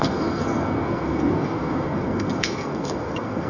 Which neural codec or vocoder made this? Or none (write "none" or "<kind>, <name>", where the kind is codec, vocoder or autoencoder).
codec, SNAC